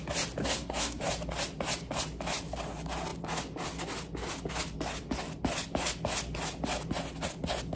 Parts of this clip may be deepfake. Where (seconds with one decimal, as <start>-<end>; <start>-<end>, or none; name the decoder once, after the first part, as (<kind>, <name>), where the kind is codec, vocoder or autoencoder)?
0.4-1.0 (codec, SNAC)